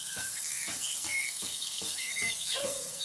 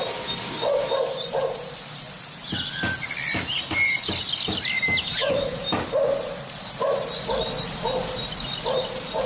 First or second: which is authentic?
second